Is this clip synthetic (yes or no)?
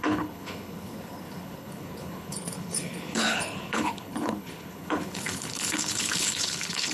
yes